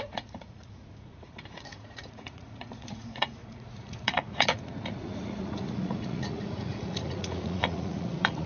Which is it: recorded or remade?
remade